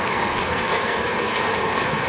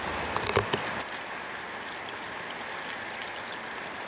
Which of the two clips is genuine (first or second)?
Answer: second